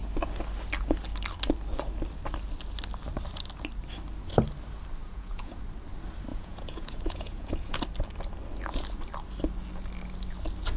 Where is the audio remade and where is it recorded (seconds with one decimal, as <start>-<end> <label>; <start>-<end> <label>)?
0.0-5.0 recorded; 5.0-5.6 remade; 5.6-6.3 recorded; 6.3-7.8 remade; 7.8-10.8 recorded